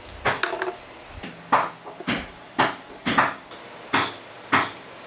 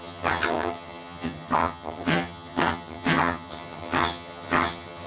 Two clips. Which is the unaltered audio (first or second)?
first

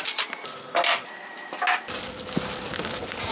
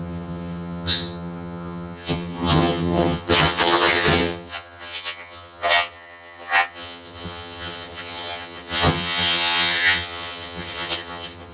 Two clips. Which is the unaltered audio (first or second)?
first